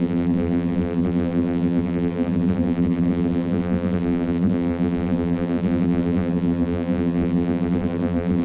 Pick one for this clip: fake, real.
fake